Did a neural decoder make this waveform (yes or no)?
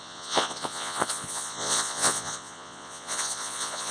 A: yes